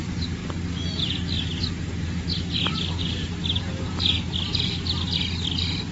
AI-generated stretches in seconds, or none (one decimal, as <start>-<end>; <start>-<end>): none